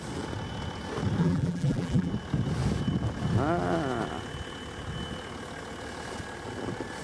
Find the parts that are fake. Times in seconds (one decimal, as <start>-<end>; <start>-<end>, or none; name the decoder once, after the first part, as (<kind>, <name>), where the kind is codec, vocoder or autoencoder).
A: 1.2-2.1 (vocoder, BigVGAN v2)